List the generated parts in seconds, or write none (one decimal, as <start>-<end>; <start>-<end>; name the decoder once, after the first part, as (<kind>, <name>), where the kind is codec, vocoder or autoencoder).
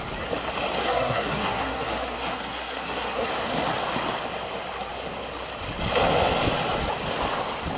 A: 0.8-3.3 (codec, SNAC)